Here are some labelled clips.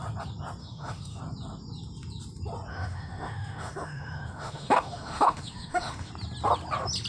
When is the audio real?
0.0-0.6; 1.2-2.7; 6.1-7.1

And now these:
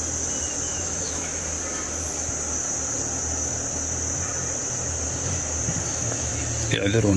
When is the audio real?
0.0-0.7; 1.4-5.9; 6.4-7.2

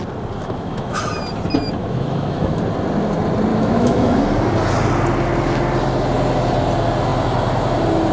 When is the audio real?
0.0-0.4; 1.0-1.8; 2.6-3.5; 4.2-8.1

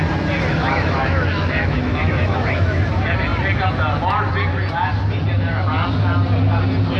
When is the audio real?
0.0-0.5; 2.9-7.0

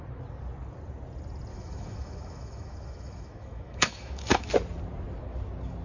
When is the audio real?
0.0-1.5; 4.5-5.8

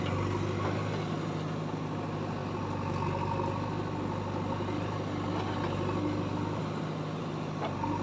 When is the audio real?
0.0-8.0

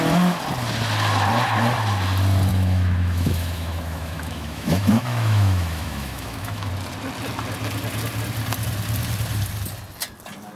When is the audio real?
0.0-2.5; 6.7-10.6